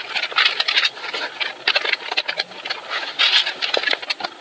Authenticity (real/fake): real